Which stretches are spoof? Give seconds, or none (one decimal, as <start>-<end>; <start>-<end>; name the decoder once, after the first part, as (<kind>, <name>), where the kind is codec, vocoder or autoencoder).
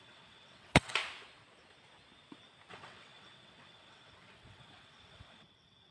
0.0-1.0 (vocoder, WaveNeXt); 2.7-5.9